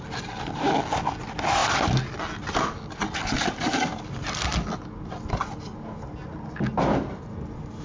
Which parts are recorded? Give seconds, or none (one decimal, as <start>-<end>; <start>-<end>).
0.0-7.8